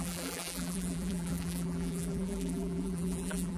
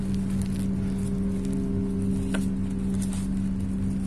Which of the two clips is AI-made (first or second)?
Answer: first